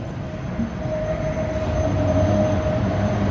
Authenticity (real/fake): real